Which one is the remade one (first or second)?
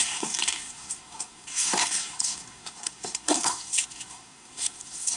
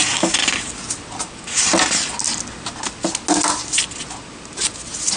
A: first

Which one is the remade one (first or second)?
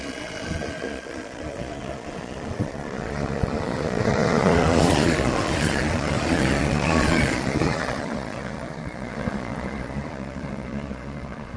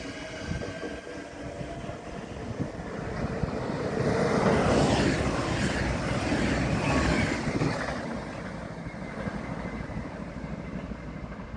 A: first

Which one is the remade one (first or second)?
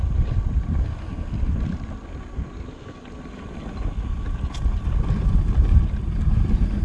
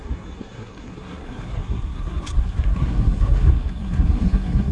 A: second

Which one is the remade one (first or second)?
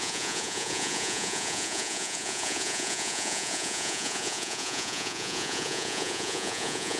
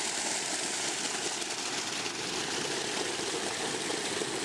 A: first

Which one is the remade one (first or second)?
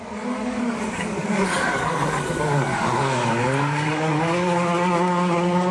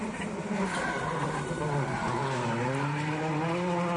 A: first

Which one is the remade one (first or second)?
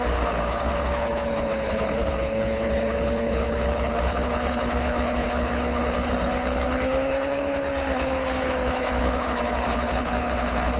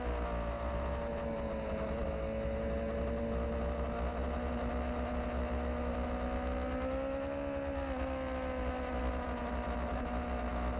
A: first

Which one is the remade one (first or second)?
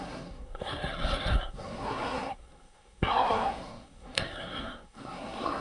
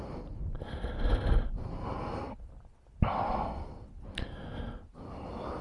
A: first